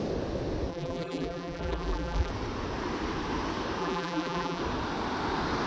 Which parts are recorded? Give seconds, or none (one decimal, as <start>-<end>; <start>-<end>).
0.0-0.7; 2.3-3.8; 4.6-5.7

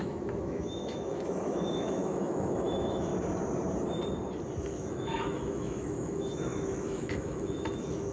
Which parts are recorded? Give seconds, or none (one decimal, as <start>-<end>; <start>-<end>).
3.1-4.6